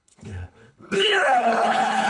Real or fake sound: fake